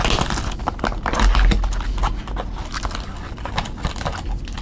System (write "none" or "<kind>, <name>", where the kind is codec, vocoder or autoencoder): none